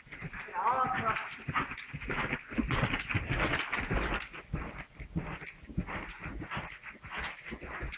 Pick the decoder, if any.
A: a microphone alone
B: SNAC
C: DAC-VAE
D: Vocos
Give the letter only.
A